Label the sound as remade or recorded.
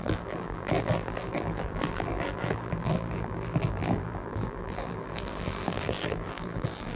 remade